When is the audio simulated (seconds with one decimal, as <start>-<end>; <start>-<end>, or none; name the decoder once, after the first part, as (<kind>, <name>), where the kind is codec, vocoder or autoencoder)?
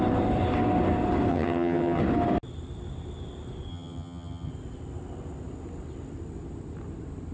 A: 1.3-2.0 (vocoder, HiFi-GAN); 3.7-4.5